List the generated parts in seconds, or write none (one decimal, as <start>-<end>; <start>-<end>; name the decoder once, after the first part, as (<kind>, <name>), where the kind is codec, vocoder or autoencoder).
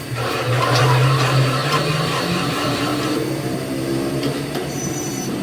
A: 0.0-2.9 (vocoder, BigVGAN v2); 4.1-5.4